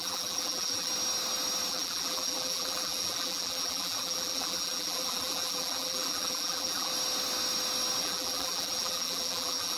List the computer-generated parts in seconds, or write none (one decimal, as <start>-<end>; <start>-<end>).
0.0-0.9; 1.7-6.9; 8.0-9.8